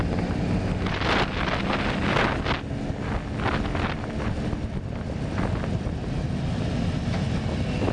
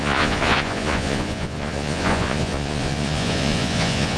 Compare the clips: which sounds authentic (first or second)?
first